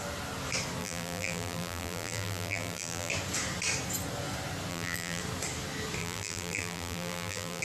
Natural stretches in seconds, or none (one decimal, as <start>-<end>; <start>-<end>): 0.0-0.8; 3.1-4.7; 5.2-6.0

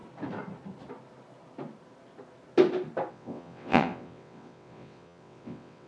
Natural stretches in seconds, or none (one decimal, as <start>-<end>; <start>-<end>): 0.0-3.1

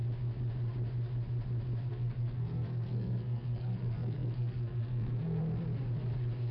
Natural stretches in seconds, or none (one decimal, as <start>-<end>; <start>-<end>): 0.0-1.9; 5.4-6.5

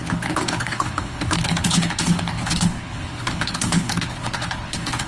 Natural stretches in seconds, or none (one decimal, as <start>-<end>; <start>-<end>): none

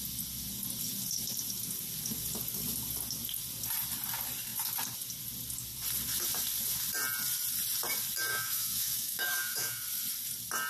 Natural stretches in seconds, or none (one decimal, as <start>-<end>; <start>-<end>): 0.0-8.3; 9.8-10.7

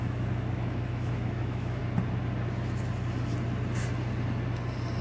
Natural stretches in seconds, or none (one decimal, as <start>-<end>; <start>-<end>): 1.8-5.0

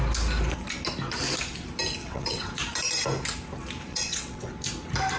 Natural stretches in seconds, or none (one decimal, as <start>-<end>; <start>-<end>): 0.0-2.0; 2.5-3.9; 4.5-5.2

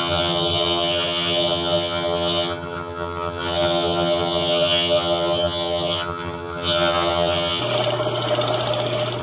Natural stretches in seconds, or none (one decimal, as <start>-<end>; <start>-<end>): 7.6-9.2